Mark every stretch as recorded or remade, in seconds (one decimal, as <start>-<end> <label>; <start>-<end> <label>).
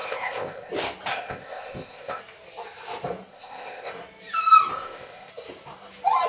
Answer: 0.0-0.7 remade; 0.7-1.1 recorded; 1.1-2.2 remade; 2.2-3.3 recorded; 3.3-3.9 remade; 3.9-4.7 recorded; 4.7-5.3 remade; 5.3-6.3 recorded